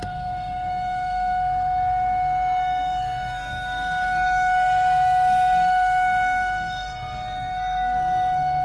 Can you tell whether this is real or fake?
fake